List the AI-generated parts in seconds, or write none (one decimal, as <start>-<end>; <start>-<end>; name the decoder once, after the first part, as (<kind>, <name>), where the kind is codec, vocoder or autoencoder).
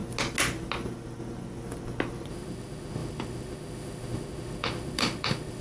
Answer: 2.3-5.6 (autoencoder, DAC-VAE)